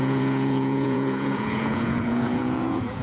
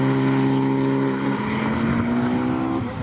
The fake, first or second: first